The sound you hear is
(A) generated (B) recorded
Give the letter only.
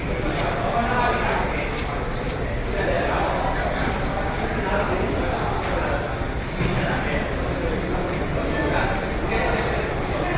B